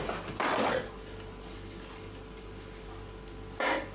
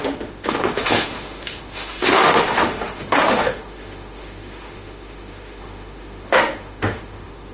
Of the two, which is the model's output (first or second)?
second